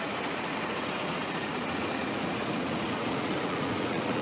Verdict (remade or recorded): remade